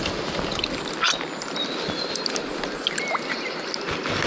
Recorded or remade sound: recorded